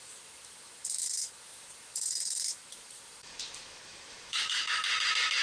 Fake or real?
fake